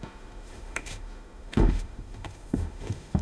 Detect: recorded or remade remade